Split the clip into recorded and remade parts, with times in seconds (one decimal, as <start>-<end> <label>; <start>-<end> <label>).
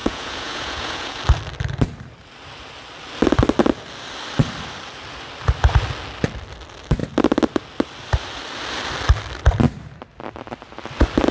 0.0-1.2 remade; 1.2-11.3 recorded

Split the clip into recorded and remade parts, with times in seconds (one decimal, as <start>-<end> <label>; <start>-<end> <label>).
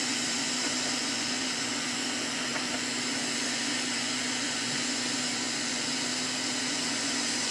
0.0-6.1 remade; 6.1-6.6 recorded; 6.6-7.5 remade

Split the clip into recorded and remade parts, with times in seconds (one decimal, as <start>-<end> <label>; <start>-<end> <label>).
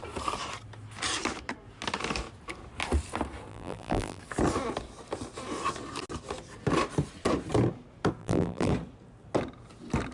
0.0-3.5 recorded; 3.5-4.2 remade; 4.2-8.2 recorded; 8.2-8.7 remade; 8.7-10.1 recorded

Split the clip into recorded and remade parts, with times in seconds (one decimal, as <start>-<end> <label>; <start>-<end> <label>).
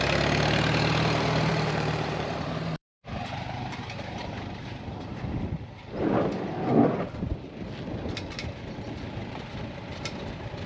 0.0-1.5 recorded; 1.5-5.2 remade; 5.2-9.2 recorded; 9.2-10.0 remade; 10.0-10.7 recorded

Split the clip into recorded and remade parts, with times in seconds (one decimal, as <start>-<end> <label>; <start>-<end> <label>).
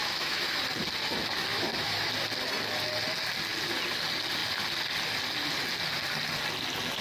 0.0-0.6 remade; 0.6-1.5 recorded; 1.5-2.1 remade; 2.1-7.0 recorded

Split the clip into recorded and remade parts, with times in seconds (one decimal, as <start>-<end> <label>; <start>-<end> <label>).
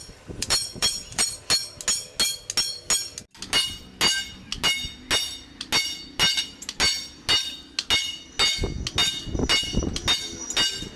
0.0-1.4 remade; 1.4-11.0 recorded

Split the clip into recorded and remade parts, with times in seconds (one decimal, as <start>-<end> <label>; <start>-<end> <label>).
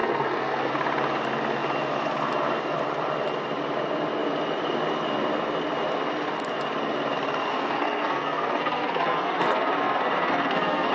0.0-0.7 remade; 0.7-7.5 recorded; 7.5-10.9 remade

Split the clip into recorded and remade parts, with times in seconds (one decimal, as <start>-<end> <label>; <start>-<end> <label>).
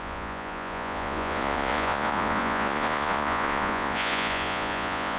0.0-5.2 remade